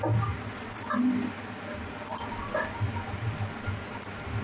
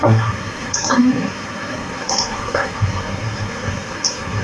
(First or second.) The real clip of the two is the first